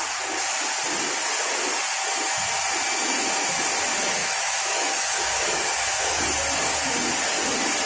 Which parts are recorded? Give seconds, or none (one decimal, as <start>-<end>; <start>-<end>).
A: 0.0-4.2; 6.2-7.9